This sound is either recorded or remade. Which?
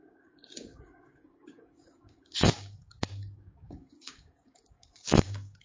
remade